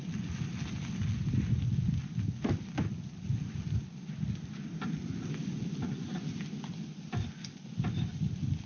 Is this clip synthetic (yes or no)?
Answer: no